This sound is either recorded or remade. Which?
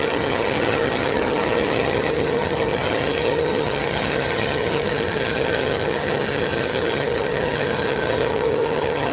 remade